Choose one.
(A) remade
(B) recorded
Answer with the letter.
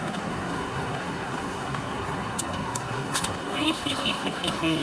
A